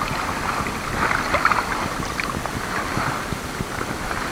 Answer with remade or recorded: recorded